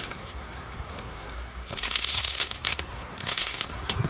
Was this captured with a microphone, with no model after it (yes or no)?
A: no